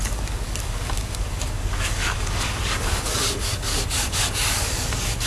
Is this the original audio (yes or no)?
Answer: no